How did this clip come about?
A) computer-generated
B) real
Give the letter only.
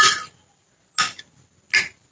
B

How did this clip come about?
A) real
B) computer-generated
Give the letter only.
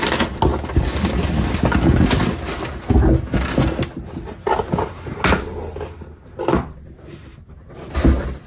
A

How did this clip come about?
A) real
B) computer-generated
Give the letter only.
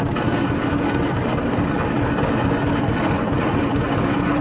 A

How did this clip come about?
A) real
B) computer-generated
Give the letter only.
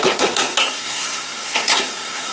B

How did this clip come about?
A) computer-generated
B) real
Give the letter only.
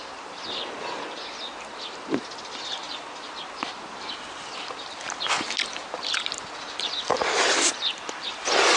B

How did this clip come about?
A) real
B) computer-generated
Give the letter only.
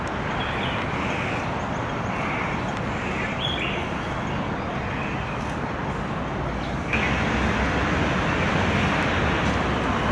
A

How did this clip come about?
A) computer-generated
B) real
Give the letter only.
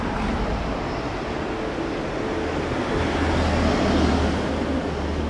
B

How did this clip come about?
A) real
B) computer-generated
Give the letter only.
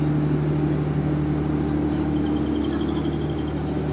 A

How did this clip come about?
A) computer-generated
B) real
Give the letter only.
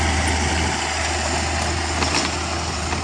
B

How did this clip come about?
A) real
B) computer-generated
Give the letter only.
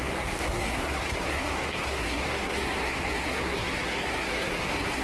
B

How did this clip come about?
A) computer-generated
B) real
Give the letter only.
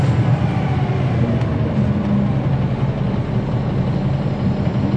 B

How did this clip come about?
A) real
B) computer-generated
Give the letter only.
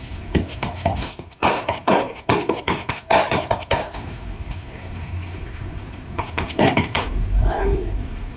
B